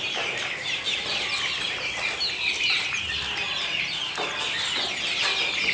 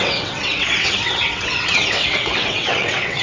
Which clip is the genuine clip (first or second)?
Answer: first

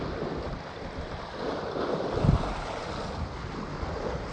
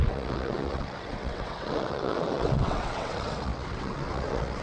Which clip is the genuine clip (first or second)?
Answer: first